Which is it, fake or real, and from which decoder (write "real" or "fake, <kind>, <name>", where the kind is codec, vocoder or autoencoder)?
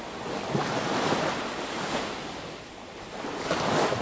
real